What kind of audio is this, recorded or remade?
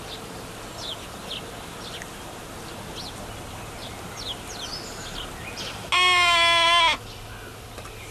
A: recorded